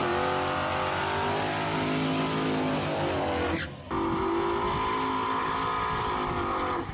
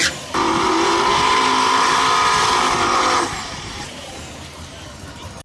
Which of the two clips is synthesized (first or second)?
second